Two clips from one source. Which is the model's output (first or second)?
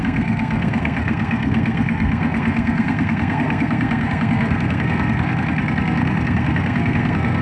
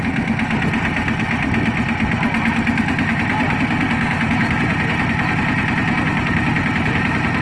first